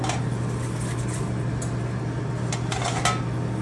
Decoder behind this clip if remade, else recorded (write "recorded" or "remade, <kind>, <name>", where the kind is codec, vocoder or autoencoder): recorded